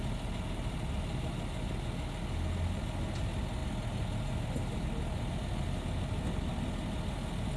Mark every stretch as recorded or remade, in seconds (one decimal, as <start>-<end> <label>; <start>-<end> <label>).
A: 0.0-7.6 recorded